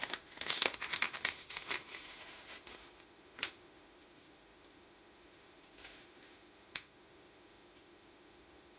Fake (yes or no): yes